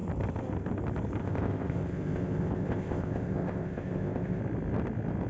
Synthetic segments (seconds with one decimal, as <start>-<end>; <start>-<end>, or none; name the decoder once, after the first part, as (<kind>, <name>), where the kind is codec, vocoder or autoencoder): 1.2-4.4 (codec, ZipCodec)